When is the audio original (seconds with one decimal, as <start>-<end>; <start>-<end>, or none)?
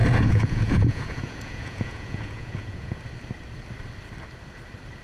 3.0-5.0